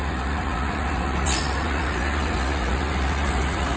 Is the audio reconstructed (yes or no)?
yes